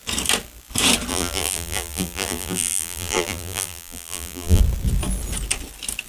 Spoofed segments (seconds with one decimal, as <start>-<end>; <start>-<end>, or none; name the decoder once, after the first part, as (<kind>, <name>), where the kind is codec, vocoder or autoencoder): 1.1-4.6 (vocoder, BigVGAN v2)